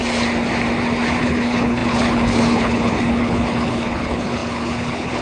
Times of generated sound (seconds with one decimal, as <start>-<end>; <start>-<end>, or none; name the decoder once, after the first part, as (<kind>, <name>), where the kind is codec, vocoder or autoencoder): 1.2-5.2 (codec, HILCodec)